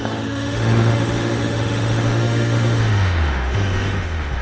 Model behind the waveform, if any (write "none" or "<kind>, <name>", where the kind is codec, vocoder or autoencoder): autoencoder, DAC-VAE